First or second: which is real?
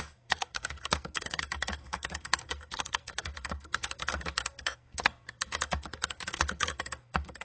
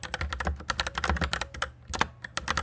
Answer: second